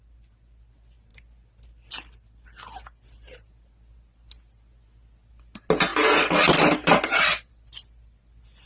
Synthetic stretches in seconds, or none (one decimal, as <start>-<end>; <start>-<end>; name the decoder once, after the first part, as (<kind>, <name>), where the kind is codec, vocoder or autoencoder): none